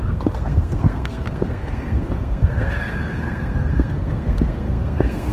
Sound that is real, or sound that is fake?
fake